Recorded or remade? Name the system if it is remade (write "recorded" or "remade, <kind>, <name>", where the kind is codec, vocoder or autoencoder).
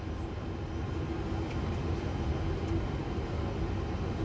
recorded